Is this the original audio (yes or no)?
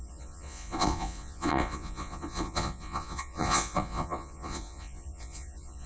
no